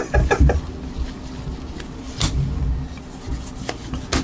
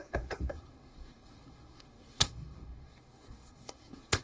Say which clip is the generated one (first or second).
second